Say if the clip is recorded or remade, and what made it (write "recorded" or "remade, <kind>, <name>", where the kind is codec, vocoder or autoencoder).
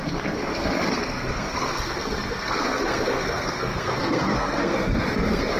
remade, codec, SNAC